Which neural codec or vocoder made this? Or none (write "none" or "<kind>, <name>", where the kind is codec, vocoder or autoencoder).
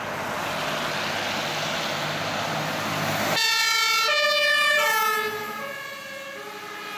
none